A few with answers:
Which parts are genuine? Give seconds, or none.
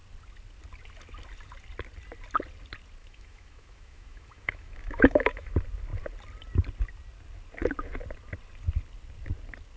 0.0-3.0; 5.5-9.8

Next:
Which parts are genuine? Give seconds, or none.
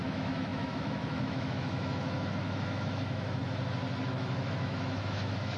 3.4-4.0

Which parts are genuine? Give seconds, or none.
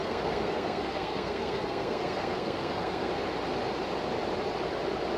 3.1-5.2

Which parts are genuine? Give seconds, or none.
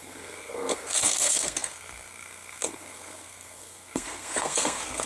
none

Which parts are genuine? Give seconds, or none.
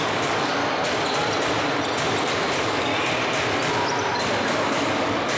0.6-2.4; 2.9-4.5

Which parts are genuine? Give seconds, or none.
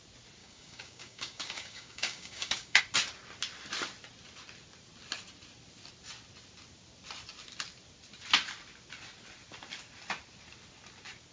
0.0-0.4; 2.8-11.3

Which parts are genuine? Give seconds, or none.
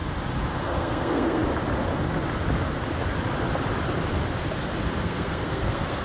0.0-0.6; 1.4-5.0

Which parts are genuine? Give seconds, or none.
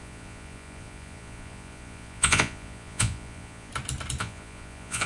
3.7-4.2